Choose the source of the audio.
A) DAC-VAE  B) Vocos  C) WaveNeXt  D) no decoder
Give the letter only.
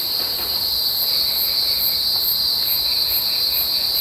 D